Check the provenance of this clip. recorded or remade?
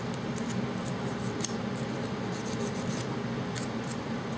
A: recorded